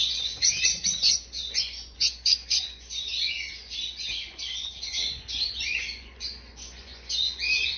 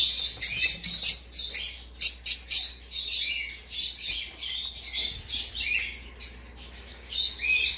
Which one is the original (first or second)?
second